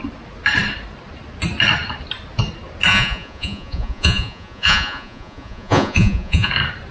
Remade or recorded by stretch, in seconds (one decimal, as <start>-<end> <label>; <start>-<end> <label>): 0.0-2.9 recorded; 2.9-6.5 remade; 6.5-6.9 recorded